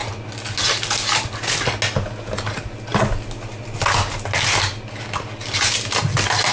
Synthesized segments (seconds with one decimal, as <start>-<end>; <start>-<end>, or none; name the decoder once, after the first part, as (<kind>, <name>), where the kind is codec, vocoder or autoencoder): none

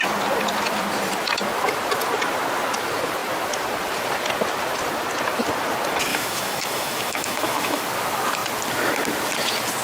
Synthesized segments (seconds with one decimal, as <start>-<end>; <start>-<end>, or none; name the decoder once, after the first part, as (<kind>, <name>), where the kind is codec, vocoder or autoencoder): 6.1-7.8 (autoencoder, DAC-VAE)

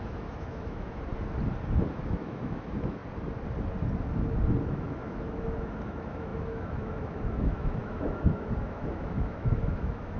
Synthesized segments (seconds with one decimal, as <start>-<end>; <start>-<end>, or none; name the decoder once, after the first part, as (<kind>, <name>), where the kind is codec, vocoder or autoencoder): 0.0-1.1 (autoencoder, DAC-VAE); 2.1-3.0; 4.6-10.2

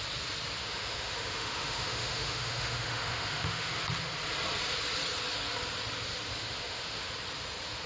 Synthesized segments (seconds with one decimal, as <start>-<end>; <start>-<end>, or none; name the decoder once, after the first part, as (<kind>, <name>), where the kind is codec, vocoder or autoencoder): 0.6-3.8 (autoencoder, DAC-VAE); 6.4-7.1

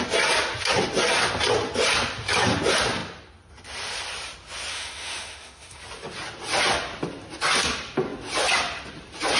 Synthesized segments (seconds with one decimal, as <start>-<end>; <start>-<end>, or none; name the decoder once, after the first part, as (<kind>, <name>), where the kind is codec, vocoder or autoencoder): 4.7-5.8 (autoencoder, DAC-VAE)

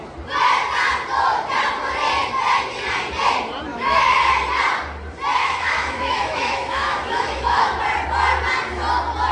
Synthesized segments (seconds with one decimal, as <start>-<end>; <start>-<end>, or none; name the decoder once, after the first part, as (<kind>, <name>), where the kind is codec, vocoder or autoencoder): 3.7-4.3 (autoencoder, DAC-VAE); 5.4-7.8